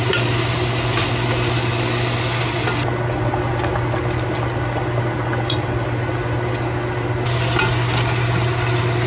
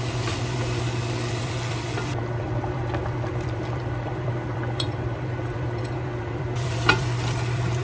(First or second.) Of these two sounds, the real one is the first